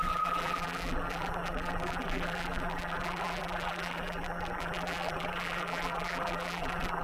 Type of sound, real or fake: fake